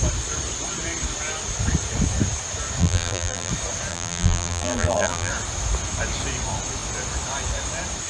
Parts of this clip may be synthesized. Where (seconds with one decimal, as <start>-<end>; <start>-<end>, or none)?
2.8-3.5; 3.9-5.3